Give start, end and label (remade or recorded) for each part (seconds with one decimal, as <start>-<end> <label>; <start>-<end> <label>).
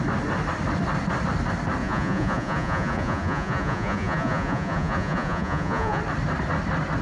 0.0-1.8 recorded; 1.8-6.0 remade; 6.0-7.0 recorded